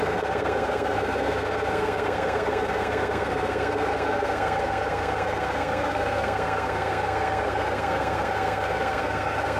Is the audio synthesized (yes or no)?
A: yes